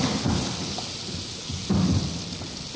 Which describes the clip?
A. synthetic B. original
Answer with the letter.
B